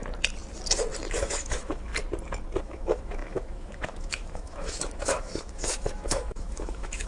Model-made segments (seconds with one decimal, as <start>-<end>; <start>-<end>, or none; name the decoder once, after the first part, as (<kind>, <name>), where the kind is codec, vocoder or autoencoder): 1.2-1.9 (autoencoder, DAC-VAE); 2.6-7.1